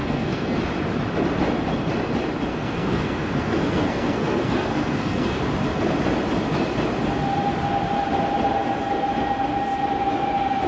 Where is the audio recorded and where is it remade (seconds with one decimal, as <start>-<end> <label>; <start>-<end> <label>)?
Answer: 0.0-0.6 remade; 0.6-2.5 recorded; 2.5-5.4 remade; 5.4-10.7 recorded